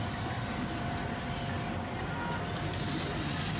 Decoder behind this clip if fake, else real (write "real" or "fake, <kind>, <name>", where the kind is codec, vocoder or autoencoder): real